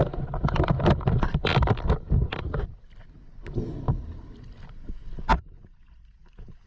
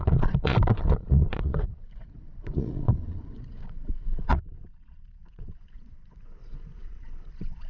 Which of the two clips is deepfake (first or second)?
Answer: second